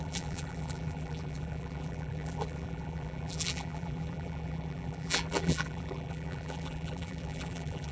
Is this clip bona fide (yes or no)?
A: no